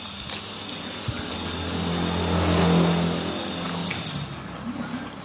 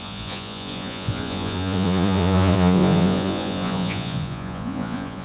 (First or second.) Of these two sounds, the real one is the first